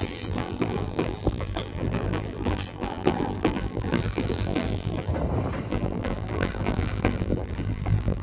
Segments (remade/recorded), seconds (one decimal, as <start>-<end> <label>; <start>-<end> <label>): 0.0-5.1 remade; 5.1-5.7 recorded; 5.7-8.2 remade